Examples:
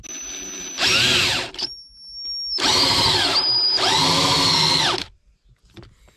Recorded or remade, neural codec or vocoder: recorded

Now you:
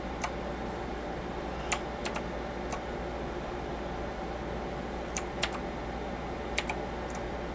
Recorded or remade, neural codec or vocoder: recorded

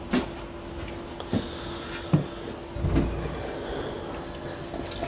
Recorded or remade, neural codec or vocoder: recorded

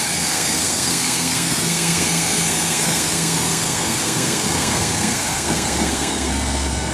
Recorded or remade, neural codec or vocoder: remade, codec, SNAC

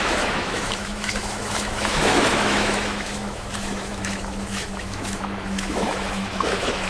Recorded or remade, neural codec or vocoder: remade, autoencoder, DAC-VAE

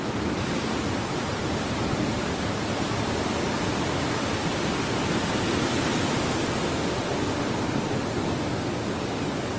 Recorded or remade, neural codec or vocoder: recorded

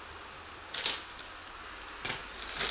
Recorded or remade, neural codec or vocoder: recorded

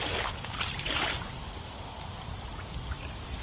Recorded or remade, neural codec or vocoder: recorded